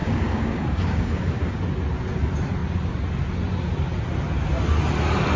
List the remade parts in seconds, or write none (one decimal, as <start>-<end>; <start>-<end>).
0.0-1.6